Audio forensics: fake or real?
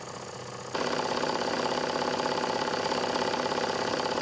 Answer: real